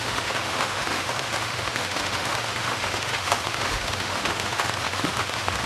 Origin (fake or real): fake